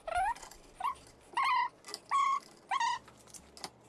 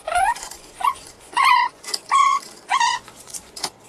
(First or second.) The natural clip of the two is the first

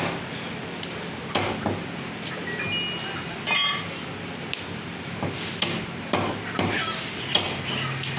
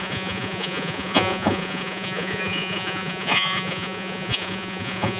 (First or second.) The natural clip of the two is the first